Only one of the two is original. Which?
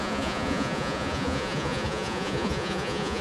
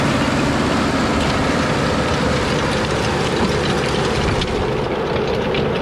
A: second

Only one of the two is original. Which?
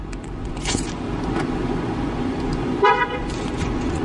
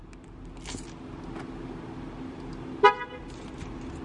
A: second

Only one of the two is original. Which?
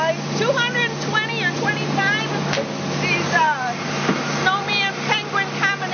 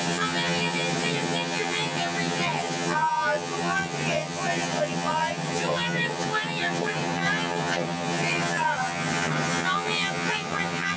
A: first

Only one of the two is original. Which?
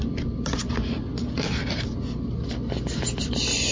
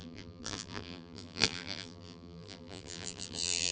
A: first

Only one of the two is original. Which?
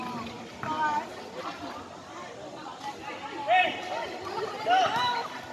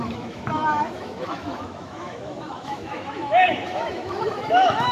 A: first